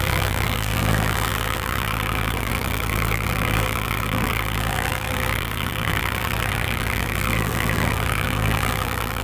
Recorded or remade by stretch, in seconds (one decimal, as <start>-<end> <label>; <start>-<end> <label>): 0.0-9.2 remade